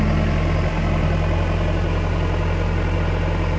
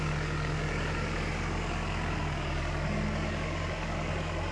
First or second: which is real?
first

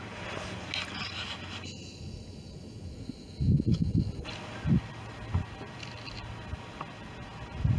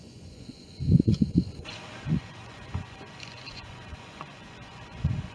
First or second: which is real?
first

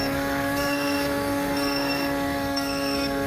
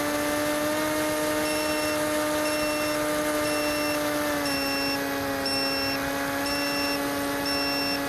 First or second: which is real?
second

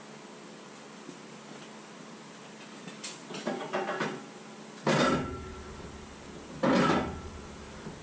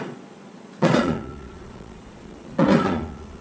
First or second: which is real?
first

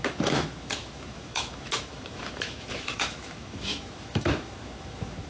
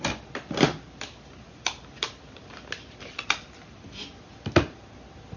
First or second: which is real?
second